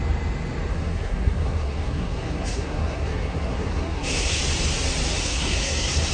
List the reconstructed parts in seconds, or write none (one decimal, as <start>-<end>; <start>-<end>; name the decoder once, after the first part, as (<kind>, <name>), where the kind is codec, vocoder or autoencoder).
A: 0.7-4.4 (codec, SNAC); 5.2-6.1